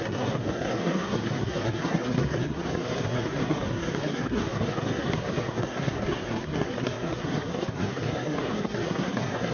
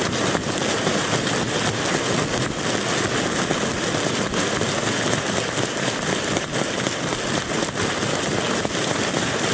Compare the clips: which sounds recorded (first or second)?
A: second